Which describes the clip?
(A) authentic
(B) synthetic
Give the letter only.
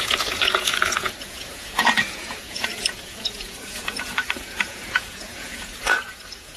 B